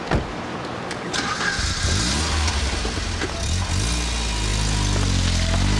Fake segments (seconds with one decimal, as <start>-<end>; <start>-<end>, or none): none